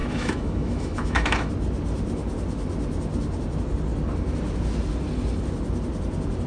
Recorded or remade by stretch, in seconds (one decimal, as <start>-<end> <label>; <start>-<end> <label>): 0.0-1.5 remade; 1.5-6.5 recorded